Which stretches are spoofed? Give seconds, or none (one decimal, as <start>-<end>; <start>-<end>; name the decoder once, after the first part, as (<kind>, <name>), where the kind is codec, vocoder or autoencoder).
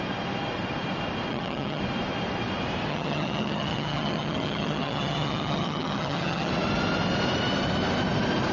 1.3-1.8 (vocoder, HiFi-GAN); 2.9-6.5